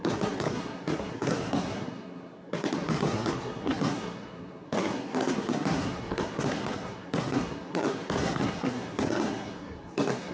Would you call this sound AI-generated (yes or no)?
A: yes